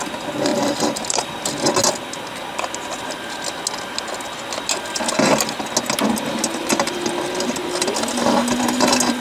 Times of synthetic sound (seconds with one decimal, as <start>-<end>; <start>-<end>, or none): 0.5-1.7